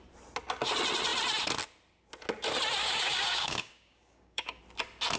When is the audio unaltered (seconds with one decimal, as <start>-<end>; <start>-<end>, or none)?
0.0-2.8; 4.6-5.2